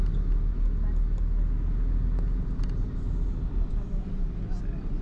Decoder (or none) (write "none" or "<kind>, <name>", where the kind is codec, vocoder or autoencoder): none